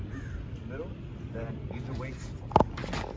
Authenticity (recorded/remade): recorded